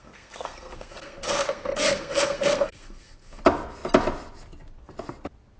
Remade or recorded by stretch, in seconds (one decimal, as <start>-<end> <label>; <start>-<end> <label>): 0.0-3.4 remade; 3.4-5.6 recorded